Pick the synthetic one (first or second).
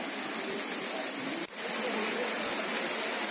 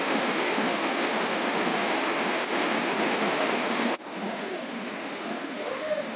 second